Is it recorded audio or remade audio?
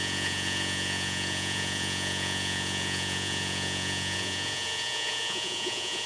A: remade